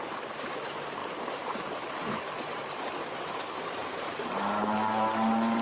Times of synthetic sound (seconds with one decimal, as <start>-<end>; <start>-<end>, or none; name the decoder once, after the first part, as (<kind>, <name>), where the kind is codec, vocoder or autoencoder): 0.0-5.6 (vocoder, BigVGAN v2)